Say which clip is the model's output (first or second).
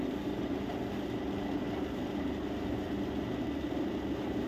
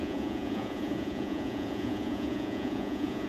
second